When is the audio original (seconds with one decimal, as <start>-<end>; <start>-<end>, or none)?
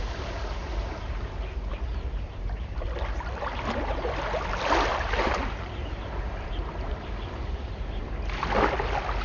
0.0-0.6; 2.9-4.9; 8.1-9.2